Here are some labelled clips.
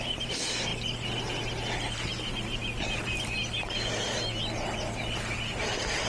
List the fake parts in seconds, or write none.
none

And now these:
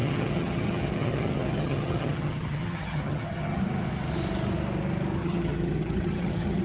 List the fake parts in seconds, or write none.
0.0-3.6 (vocoder, HiFi-GAN); 5.2-6.6

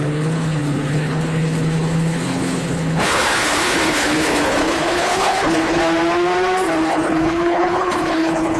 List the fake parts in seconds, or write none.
0.0-5.8 (codec, HILCodec); 6.9-8.6

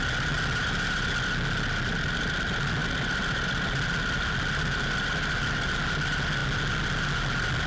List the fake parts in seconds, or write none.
none

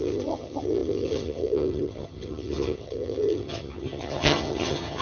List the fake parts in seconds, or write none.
0.0-5.0 (vocoder, HiFi-GAN)

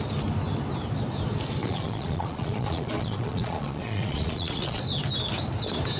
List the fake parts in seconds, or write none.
1.6-4.8 (vocoder, Vocos)

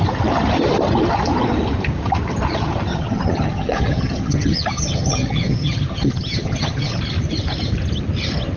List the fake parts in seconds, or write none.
2.9-7.0 (vocoder, HiFi-GAN)